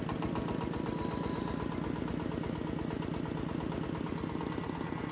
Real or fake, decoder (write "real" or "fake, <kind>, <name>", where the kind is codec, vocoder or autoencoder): real